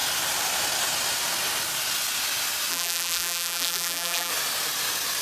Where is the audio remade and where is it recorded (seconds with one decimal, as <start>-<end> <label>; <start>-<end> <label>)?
0.0-2.7 recorded; 2.7-4.3 remade; 4.3-5.2 recorded

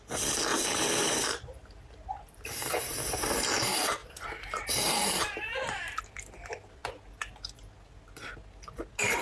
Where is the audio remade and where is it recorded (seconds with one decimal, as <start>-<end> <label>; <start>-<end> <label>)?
0.0-0.5 recorded; 0.5-3.2 remade; 3.2-4.0 recorded; 4.0-6.0 remade; 6.0-9.2 recorded

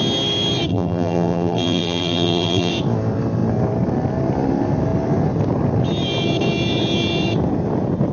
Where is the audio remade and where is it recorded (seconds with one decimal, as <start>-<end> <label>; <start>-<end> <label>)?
0.0-0.7 recorded; 0.7-2.7 remade; 2.7-8.1 recorded